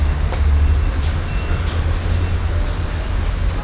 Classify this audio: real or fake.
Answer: real